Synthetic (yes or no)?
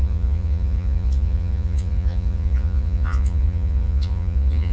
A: yes